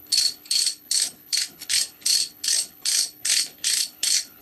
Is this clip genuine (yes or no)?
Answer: no